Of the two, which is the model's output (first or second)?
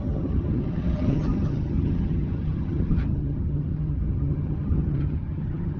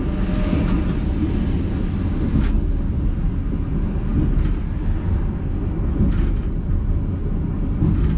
first